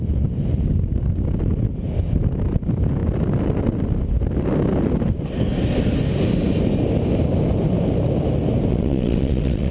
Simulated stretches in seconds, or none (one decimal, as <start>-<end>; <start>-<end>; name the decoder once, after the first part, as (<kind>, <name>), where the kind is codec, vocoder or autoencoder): 8.7-9.7 (vocoder, WaveNeXt)